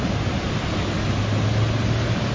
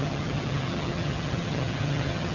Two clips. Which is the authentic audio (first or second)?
first